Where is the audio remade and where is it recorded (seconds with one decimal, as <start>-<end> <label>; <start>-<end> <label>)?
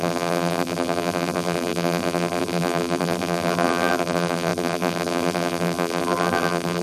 0.0-6.8 remade